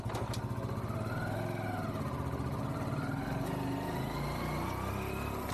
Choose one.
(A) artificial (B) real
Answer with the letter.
B